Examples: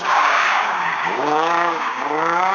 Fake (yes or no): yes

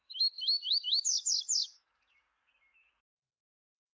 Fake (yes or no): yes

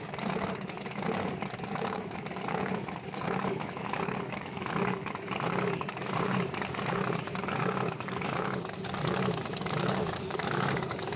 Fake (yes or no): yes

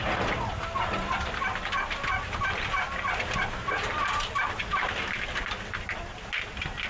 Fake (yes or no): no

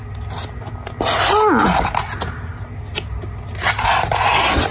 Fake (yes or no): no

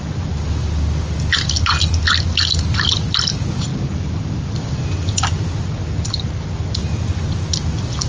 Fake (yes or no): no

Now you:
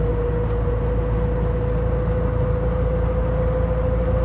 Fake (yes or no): no